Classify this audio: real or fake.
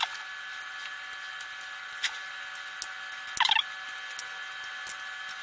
real